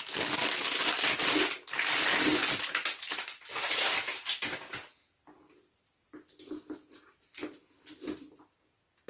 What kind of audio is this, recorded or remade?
recorded